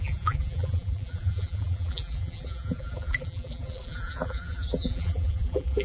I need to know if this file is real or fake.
fake